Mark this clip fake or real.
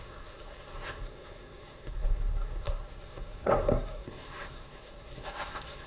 fake